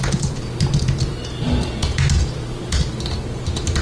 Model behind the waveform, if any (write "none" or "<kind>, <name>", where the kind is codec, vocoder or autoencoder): none